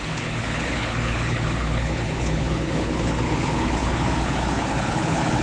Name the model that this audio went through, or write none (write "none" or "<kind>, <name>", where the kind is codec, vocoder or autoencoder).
codec, HILCodec